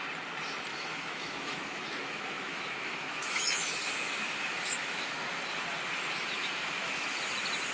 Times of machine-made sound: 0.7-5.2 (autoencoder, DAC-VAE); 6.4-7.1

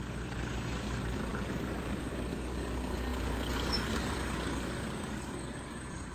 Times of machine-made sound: 0.0-6.1 (codec, DAC)

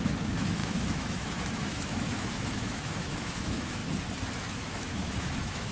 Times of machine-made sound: 0.0-3.8 (autoencoder, DAC-VAE); 4.4-5.7

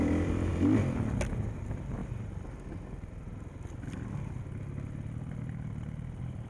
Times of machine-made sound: 0.0-0.5 (vocoder, BigVGAN v2); 1.3-2.0; 5.4-6.5

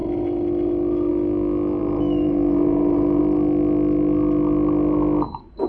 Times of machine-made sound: 1.8-3.2 (vocoder, BigVGAN v2)

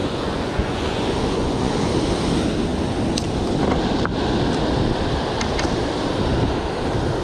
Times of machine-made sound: 0.0-1.9 (vocoder, Vocos)

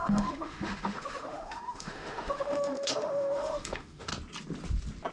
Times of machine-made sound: 0.0-4.1 (autoencoder, DAC-VAE)

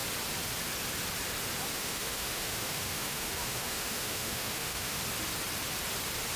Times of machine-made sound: 1.7-5.0 (autoencoder, DAC-VAE)